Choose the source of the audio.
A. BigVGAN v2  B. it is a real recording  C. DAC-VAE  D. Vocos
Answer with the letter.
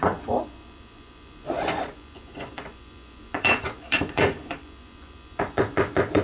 D